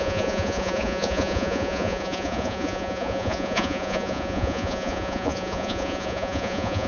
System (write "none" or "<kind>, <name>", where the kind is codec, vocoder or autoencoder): vocoder, Vocos